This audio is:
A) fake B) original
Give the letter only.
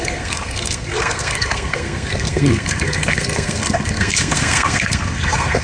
A